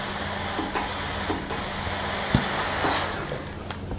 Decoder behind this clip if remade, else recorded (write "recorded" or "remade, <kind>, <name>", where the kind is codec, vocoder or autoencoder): recorded